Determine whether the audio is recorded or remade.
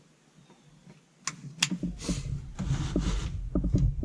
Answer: recorded